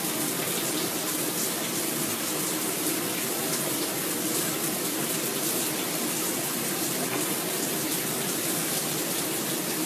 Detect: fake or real fake